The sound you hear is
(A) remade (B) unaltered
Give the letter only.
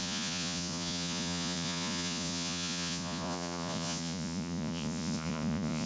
A